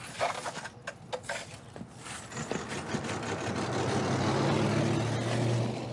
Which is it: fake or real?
real